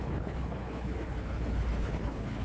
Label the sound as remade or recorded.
remade